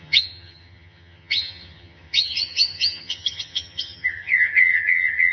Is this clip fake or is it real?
fake